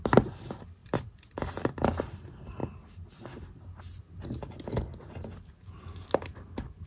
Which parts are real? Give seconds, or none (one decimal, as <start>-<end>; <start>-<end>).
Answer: 0.0-6.9

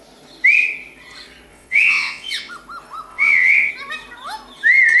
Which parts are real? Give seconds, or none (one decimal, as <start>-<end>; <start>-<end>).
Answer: 0.0-1.5; 2.5-3.1; 3.7-5.0

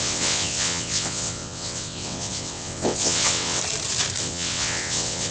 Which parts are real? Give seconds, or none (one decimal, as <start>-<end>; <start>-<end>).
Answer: 3.6-4.2